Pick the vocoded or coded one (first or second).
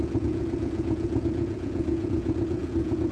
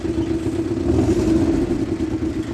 first